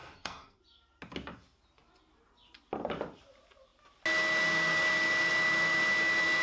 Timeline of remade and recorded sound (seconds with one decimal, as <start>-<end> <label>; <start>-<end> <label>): 0.0-0.6 remade; 0.6-6.4 recorded